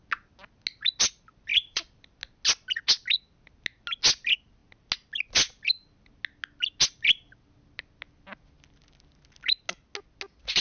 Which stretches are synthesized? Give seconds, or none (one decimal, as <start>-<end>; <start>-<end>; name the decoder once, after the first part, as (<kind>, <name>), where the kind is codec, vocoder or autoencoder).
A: 1.5-2.1 (vocoder, BigVGAN v2)